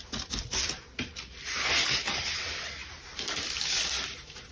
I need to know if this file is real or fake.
real